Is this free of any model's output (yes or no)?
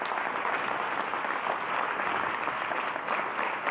yes